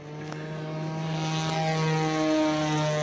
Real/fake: real